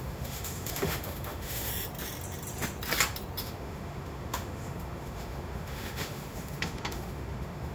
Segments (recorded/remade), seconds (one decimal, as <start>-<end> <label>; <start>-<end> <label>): 0.0-1.7 remade; 1.7-3.4 recorded; 3.4-7.7 remade